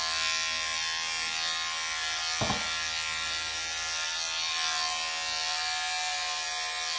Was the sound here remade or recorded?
recorded